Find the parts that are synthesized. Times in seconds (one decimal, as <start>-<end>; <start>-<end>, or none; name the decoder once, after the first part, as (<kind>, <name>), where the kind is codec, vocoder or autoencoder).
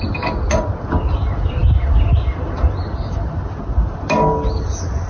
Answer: none